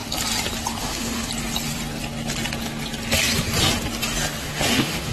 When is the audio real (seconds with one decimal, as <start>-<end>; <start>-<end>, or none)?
0.0-0.8; 1.3-4.4